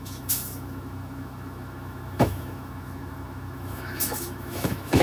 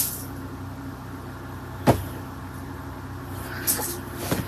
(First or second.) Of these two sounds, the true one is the second